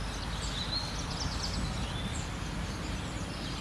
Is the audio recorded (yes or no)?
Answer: yes